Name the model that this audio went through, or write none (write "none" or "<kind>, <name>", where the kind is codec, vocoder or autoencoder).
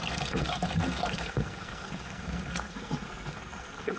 codec, SNAC